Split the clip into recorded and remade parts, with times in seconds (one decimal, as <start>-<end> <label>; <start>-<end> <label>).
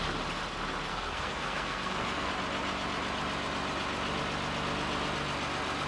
0.0-0.9 recorded; 0.9-2.3 remade; 2.3-5.9 recorded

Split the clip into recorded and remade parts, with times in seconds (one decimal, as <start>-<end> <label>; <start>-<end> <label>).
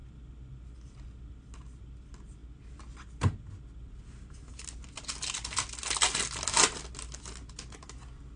0.0-8.4 recorded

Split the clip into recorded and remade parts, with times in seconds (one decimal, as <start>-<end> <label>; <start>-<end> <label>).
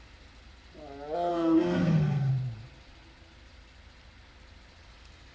0.0-1.3 recorded; 1.3-2.3 remade; 2.3-5.3 recorded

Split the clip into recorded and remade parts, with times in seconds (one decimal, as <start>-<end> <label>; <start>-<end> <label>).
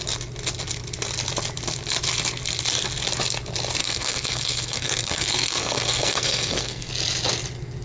0.0-3.8 recorded; 3.8-6.9 remade; 6.9-7.8 recorded